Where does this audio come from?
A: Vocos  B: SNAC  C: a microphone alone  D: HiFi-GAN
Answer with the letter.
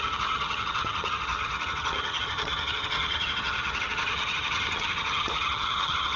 D